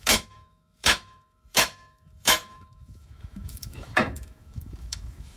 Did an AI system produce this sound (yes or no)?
yes